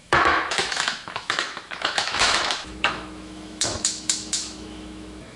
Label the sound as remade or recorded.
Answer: remade